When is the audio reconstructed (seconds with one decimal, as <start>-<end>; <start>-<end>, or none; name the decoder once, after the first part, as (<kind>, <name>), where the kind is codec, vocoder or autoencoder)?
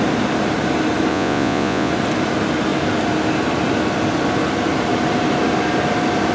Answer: 1.1-1.9 (vocoder, Vocos)